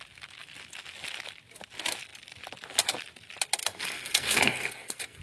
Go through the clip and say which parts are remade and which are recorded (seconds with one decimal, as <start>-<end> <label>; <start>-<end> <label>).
0.0-3.6 recorded; 3.6-5.2 remade